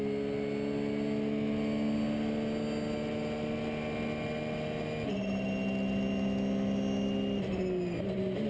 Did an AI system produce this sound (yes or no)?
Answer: no